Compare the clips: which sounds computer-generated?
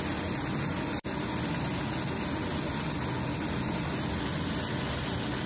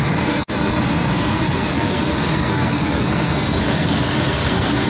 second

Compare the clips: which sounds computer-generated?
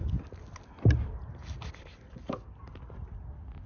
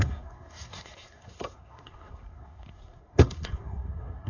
second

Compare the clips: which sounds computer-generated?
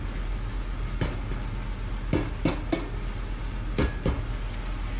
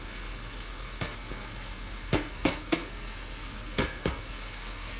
second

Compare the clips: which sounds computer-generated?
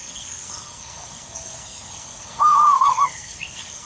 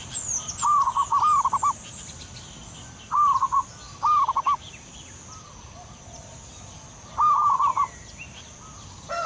first